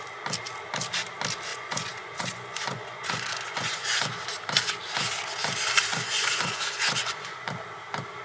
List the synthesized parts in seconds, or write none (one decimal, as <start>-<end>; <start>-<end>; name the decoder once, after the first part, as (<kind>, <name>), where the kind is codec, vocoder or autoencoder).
1.5-4.0 (vocoder, Vocos); 5.9-7.5